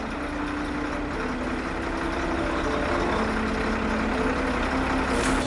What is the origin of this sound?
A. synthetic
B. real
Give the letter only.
B